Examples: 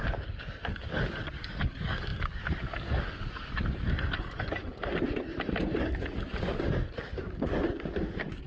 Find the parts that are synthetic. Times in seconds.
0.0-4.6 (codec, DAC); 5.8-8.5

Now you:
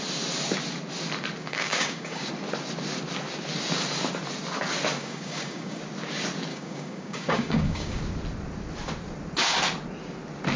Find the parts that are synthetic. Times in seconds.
1.4-2.3 (codec, DAC); 5.0-5.8; 6.5-8.0